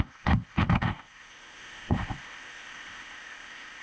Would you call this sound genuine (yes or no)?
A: no